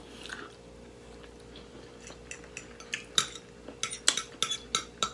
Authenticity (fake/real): real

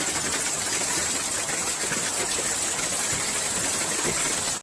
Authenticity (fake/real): real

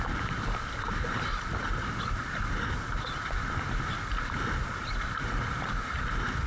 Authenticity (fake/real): real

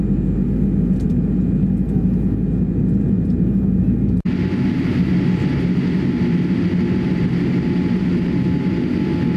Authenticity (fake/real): real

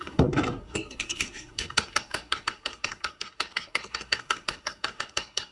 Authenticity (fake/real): fake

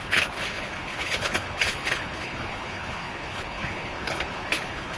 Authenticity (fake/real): fake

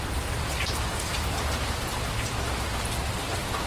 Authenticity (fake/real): real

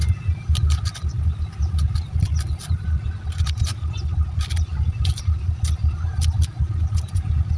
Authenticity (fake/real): real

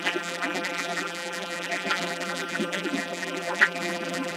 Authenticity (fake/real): fake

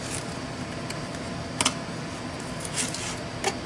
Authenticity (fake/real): real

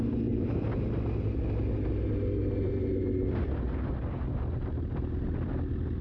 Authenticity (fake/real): real